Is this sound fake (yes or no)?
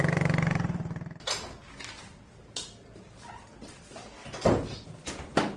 no